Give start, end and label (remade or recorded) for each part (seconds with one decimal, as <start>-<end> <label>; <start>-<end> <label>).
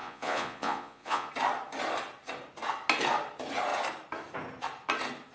0.0-1.3 remade; 1.3-5.3 recorded